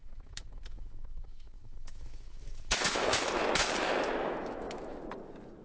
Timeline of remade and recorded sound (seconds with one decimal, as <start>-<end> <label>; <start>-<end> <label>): 0.0-3.4 remade; 3.4-4.2 recorded; 4.2-5.0 remade; 5.0-5.6 recorded